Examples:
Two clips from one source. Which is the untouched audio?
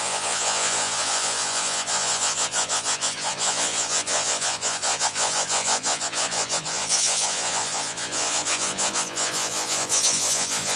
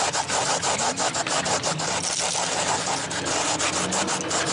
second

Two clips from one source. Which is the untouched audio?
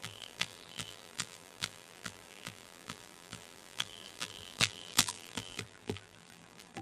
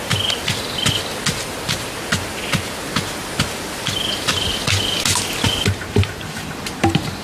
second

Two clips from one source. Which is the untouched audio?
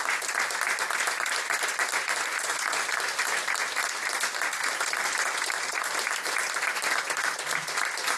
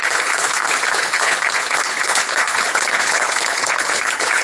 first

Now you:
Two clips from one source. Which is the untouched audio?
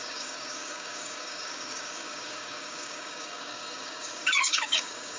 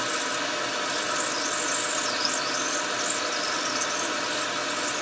second